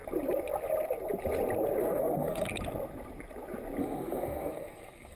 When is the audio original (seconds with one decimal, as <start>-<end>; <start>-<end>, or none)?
0.0-1.8; 2.5-3.8